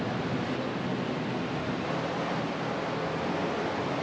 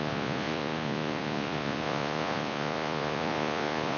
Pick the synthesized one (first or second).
second